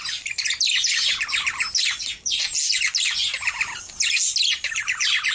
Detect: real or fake real